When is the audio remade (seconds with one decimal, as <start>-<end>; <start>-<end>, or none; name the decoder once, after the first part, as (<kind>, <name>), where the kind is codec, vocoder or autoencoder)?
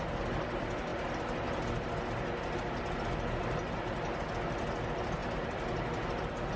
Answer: 5.2-5.8 (vocoder, BigVGAN v2)